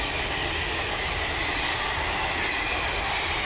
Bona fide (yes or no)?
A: yes